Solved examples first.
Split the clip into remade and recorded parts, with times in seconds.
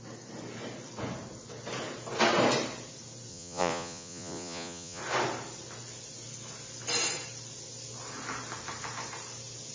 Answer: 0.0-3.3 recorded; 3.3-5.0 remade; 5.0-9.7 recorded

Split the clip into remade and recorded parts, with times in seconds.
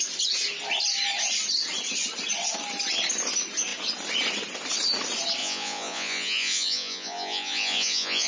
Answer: 0.0-5.4 recorded; 5.4-8.3 remade